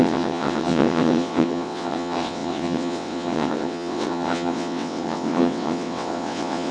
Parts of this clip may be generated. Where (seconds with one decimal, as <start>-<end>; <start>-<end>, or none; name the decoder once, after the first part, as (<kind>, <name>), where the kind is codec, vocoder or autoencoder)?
0.0-6.7 (vocoder, WaveNeXt)